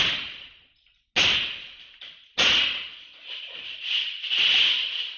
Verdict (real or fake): real